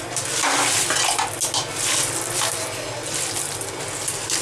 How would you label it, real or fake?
real